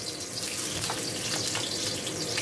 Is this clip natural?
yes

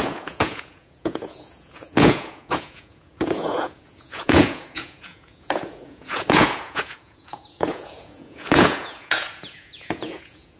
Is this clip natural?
no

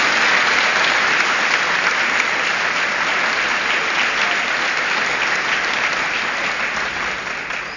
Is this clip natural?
yes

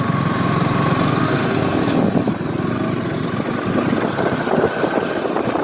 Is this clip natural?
yes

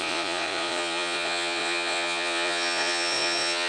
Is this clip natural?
no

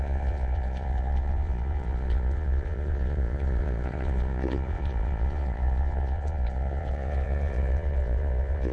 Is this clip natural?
no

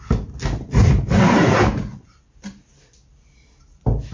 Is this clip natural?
yes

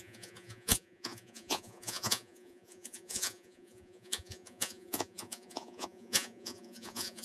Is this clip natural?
no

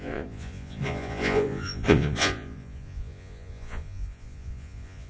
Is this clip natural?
no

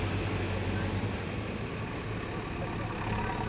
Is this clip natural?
yes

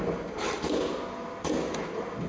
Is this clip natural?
yes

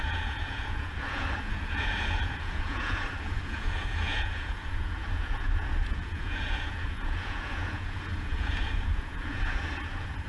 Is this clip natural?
no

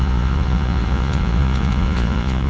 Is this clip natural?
no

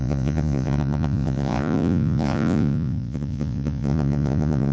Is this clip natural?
no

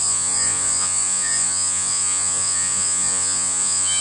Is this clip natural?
no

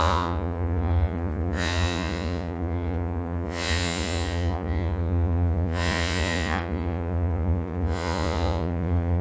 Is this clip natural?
no